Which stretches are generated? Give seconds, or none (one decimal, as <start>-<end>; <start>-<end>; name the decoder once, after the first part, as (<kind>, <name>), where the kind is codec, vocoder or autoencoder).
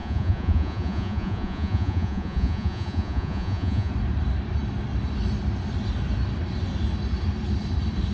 0.0-3.9 (vocoder, Vocos)